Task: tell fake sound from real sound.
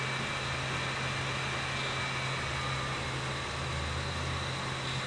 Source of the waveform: real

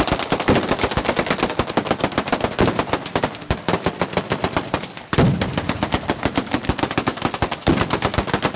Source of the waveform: real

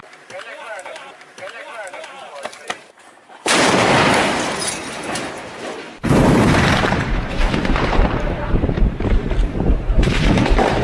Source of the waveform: fake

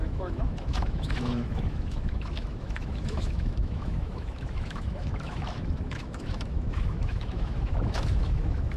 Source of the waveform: fake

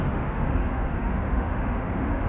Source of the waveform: fake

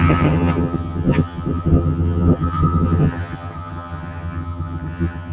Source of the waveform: fake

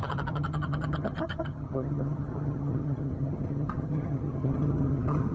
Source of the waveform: fake